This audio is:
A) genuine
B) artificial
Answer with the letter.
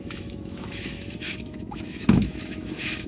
B